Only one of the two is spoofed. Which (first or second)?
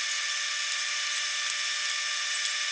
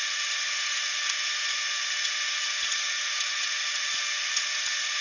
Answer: second